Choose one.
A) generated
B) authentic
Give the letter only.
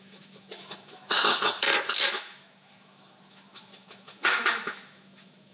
A